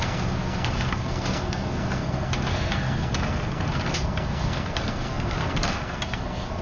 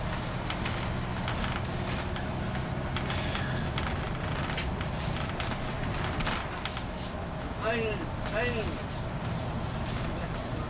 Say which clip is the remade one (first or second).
first